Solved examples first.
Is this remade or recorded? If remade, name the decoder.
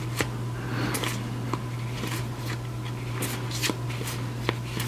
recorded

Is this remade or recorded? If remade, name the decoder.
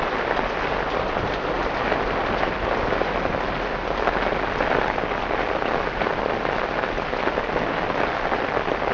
recorded